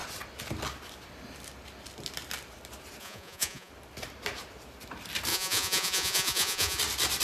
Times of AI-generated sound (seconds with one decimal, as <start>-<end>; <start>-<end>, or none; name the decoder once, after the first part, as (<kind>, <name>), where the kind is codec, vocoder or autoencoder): 3.0-3.7 (vocoder, Vocos); 5.3-6.8